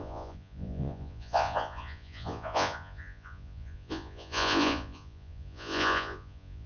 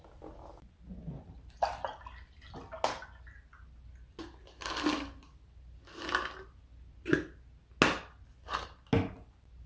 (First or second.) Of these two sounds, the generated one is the first